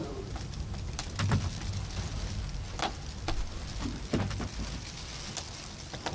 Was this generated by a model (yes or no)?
no